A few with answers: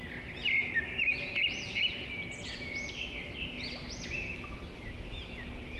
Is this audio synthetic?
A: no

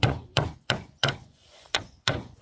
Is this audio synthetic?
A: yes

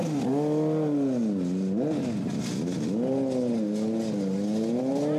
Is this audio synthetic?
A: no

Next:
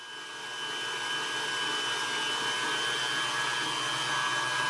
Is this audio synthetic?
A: no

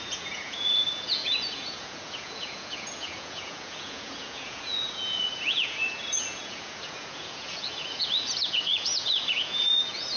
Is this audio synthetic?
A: yes